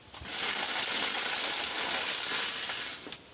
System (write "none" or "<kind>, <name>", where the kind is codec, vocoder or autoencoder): none